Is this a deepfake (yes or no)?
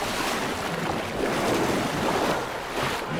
no